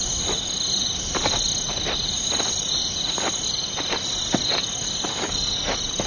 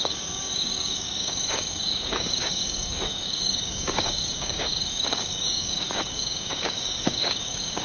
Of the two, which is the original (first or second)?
first